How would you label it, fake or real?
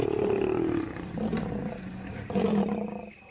real